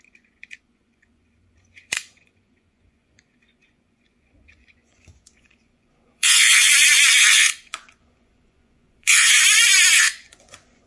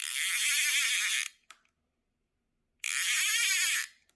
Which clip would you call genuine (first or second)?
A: second